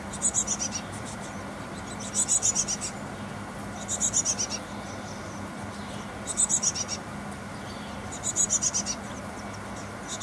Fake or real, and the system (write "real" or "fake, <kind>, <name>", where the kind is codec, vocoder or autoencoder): real